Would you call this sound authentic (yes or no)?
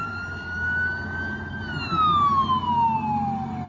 yes